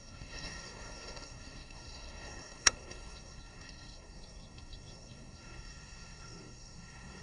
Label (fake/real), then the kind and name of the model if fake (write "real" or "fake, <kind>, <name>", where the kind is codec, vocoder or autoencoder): fake, codec, SNAC